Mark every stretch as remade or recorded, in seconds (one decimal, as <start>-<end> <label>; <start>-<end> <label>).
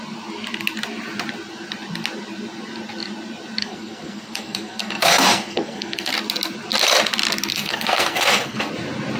0.0-3.6 recorded; 3.6-6.1 remade; 6.1-7.5 recorded; 7.5-8.7 remade; 8.7-9.2 recorded